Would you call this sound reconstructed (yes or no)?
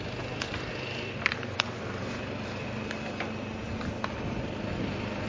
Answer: no